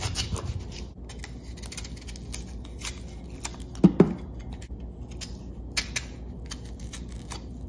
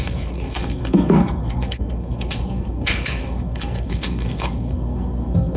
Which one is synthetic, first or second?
second